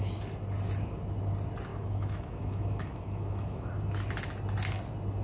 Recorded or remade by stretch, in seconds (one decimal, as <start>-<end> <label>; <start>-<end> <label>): 0.0-1.7 recorded; 1.7-3.7 remade; 3.7-5.2 recorded